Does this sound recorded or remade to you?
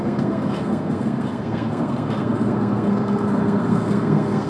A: remade